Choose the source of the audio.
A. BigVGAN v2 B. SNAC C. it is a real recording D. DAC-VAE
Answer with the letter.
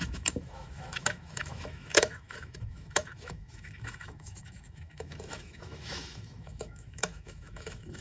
D